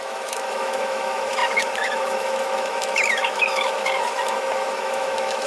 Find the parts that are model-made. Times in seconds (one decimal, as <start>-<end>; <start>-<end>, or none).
0.0-5.5